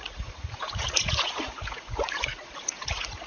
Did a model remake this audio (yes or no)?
yes